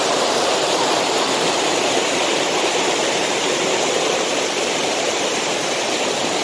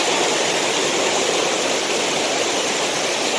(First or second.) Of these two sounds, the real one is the second